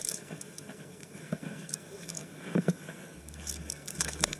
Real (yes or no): no